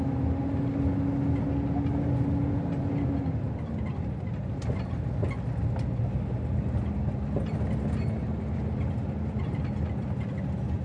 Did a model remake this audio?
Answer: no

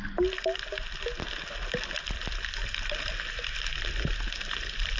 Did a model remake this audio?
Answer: no